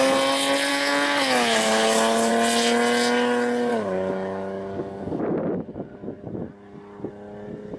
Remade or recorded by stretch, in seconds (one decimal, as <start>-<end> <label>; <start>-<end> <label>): 0.0-0.7 recorded; 0.7-2.3 remade; 2.3-3.7 recorded; 3.7-5.2 remade; 5.2-7.8 recorded